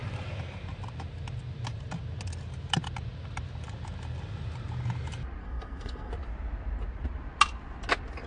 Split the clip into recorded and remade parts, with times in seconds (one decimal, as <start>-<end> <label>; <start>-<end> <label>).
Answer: 0.0-5.4 recorded; 5.4-6.1 remade; 6.1-8.3 recorded